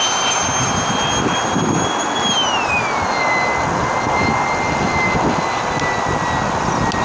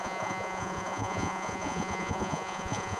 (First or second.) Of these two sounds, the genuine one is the first